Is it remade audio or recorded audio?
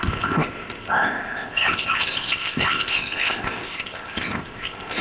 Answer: remade